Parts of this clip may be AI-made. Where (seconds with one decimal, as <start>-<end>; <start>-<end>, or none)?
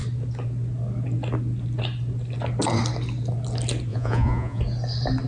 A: 3.9-4.6